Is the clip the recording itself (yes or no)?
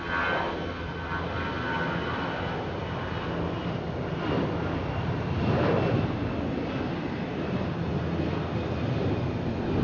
yes